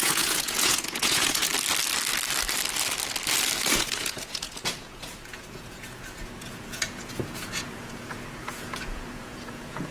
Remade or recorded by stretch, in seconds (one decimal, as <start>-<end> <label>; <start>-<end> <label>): 0.0-1.5 remade; 1.5-3.7 recorded; 3.7-9.9 remade